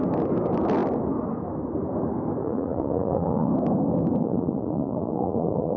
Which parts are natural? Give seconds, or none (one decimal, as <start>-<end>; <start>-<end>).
0.0-2.4; 3.5-4.2